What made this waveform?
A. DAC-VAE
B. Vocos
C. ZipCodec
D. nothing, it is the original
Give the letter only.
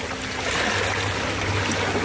D